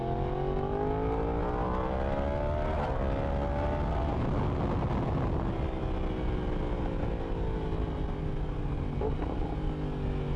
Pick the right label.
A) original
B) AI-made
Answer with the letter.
A